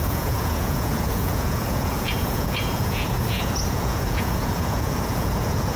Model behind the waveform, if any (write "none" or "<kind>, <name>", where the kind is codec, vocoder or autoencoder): vocoder, Vocos